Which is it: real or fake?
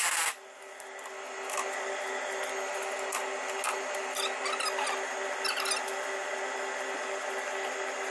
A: real